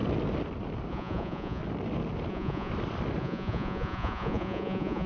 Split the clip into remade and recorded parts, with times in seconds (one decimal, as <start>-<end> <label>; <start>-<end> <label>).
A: 0.0-0.9 recorded; 0.9-1.6 remade; 1.6-2.3 recorded; 2.3-2.7 remade; 2.7-3.2 recorded; 3.2-5.1 remade